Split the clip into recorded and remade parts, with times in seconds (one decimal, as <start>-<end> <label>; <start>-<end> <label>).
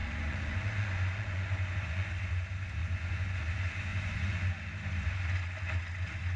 0.0-2.1 remade; 2.1-2.8 recorded; 2.8-3.4 remade; 3.4-3.9 recorded; 3.9-4.5 remade; 4.5-6.4 recorded